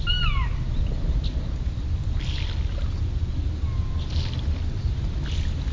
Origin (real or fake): real